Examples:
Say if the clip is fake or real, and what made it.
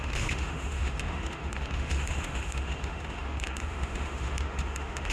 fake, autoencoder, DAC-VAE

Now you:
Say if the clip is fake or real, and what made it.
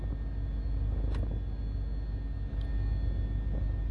real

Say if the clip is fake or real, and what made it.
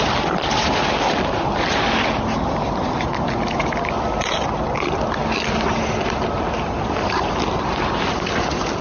real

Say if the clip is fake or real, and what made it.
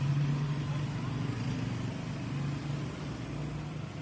real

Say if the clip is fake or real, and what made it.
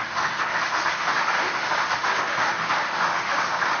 fake, autoencoder, DAC-VAE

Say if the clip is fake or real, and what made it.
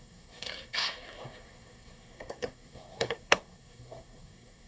fake, codec, SNAC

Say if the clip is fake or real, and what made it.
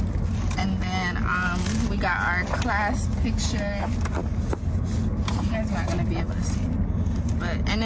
real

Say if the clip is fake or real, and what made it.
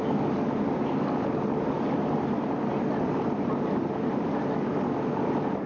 real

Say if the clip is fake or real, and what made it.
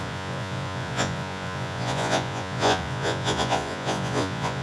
fake, vocoder, Vocos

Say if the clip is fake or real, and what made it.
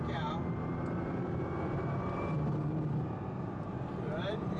fake, vocoder, BigVGAN v2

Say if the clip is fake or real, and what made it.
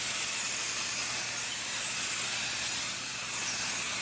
real